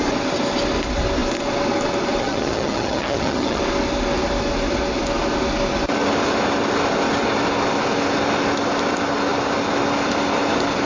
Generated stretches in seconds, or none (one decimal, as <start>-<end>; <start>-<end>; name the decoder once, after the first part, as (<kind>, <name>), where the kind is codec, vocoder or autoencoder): 2.2-3.6 (vocoder, HiFi-GAN)